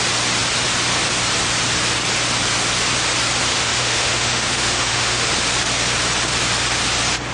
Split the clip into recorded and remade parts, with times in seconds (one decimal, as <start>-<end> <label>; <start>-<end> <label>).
0.0-3.5 recorded; 3.5-5.3 remade; 5.3-7.3 recorded